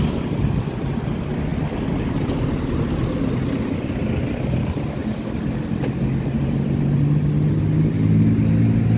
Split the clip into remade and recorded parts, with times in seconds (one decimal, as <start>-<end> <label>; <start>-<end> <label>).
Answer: 0.0-9.0 recorded

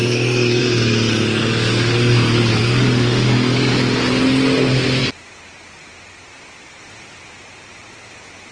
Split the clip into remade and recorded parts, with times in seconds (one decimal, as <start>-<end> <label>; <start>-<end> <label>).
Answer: 0.0-0.6 remade; 0.6-1.4 recorded; 1.4-3.7 remade; 3.7-8.5 recorded

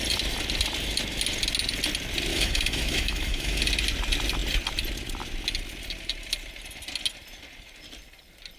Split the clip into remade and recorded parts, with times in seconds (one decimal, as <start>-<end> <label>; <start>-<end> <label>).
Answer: 0.0-2.3 recorded; 2.3-3.6 remade; 3.6-8.6 recorded

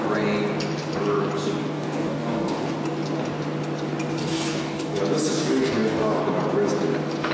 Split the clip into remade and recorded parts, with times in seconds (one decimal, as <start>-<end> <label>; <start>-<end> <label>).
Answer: 0.0-1.6 recorded; 1.6-2.7 remade; 2.7-4.2 recorded; 4.2-5.0 remade; 5.0-5.4 recorded; 5.4-6.2 remade; 6.2-7.3 recorded

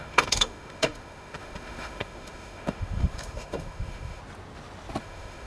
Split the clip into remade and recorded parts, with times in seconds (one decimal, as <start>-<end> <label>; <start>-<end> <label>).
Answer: 0.0-4.2 remade; 4.2-5.0 recorded; 5.0-5.5 remade

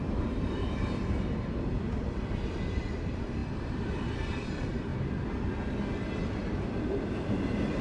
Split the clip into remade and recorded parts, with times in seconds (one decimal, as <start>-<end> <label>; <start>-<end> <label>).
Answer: 0.0-4.9 remade; 4.9-6.8 recorded; 6.8-7.8 remade

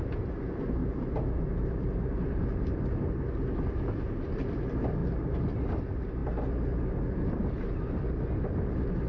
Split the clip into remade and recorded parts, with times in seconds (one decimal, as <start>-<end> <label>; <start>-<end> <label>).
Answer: 0.0-0.8 recorded; 0.8-3.1 remade; 3.1-5.0 recorded; 5.0-5.5 remade; 5.5-9.1 recorded